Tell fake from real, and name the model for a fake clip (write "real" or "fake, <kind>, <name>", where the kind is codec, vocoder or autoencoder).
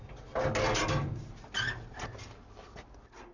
real